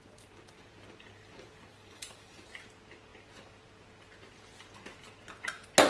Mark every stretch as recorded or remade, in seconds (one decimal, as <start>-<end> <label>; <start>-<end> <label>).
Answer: 0.0-1.7 recorded; 1.7-2.5 remade; 2.5-5.9 recorded